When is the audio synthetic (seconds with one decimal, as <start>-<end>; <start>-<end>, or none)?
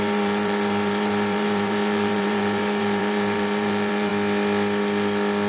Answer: 0.0-4.1